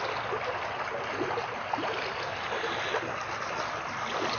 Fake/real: real